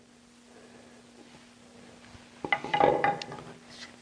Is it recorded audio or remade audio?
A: recorded